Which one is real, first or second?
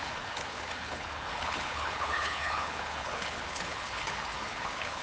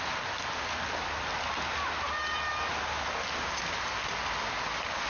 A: second